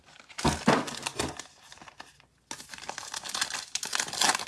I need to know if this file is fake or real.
real